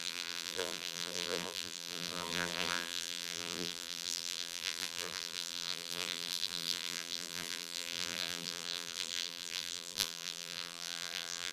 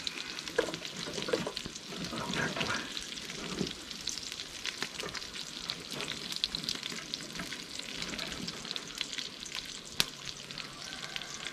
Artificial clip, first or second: first